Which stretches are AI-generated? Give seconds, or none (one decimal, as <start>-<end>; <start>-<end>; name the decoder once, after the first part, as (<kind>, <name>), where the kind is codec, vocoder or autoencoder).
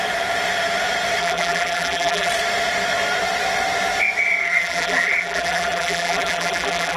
1.2-2.3 (vocoder, BigVGAN v2); 4.4-7.0